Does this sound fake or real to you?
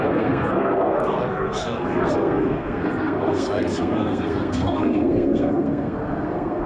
fake